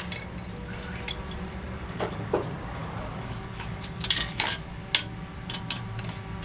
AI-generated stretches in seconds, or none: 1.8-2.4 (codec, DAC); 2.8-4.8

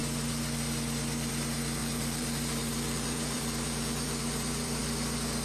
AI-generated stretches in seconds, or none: 1.8-4.8 (vocoder, BigVGAN v2)

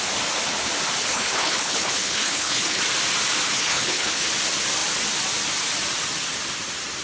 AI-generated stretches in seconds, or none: 1.0-2.8 (codec, HILCodec); 3.5-4.3

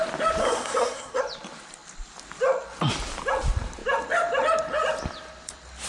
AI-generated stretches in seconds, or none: 0.4-1.2 (codec, SNAC)

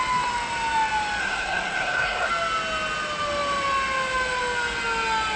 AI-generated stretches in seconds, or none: 1.2-2.3 (codec, SNAC)

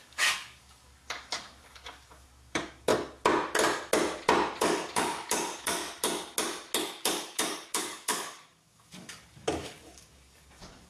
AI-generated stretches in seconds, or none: 0.0-2.9 (codec, DAC); 4.6-5.8; 6.8-10.9

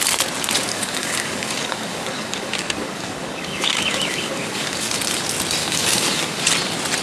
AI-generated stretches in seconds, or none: 0.7-4.9 (codec, DAC); 5.6-6.4